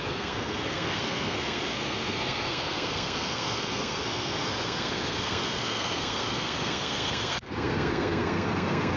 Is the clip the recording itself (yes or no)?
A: no